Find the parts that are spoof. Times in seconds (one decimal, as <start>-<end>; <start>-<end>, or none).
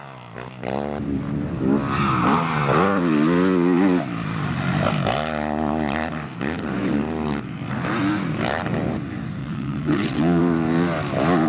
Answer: 9.4-10.4